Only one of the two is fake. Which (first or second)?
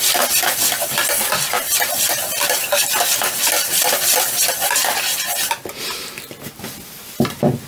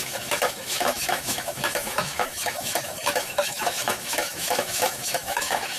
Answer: second